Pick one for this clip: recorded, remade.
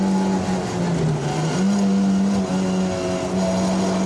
recorded